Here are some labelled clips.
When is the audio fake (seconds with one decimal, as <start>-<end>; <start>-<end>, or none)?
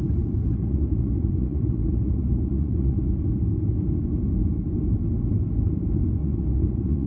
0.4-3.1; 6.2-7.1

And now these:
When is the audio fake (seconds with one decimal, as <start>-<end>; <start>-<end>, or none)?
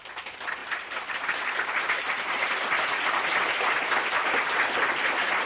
none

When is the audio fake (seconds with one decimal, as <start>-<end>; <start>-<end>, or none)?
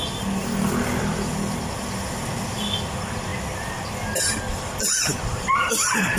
5.0-6.2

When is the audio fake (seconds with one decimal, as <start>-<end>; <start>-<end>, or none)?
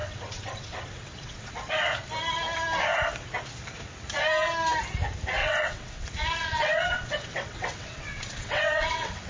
0.0-1.5; 5.4-9.3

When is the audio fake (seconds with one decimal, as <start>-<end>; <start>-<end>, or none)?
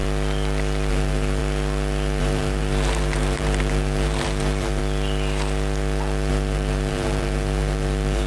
0.9-1.4; 2.2-4.8; 6.3-8.3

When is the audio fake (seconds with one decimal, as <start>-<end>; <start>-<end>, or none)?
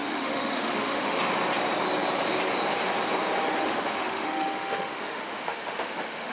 0.0-1.2; 3.6-6.3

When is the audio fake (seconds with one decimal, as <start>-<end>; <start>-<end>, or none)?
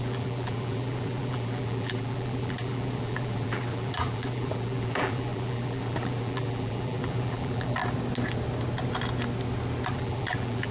0.0-7.8; 9.9-10.7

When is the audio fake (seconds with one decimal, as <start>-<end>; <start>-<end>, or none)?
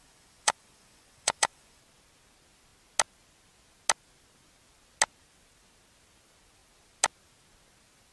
0.0-1.8